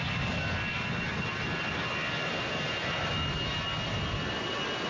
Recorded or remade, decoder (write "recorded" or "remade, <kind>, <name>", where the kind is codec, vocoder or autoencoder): recorded